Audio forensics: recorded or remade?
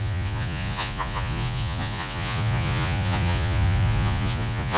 remade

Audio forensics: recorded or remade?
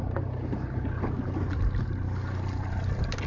recorded